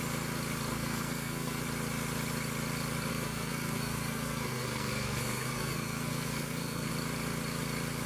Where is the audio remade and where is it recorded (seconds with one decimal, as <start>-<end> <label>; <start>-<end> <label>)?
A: 0.0-0.7 recorded; 0.7-1.6 remade; 1.6-3.1 recorded; 3.1-6.9 remade; 6.9-8.1 recorded